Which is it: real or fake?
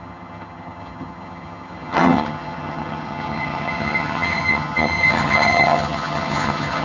fake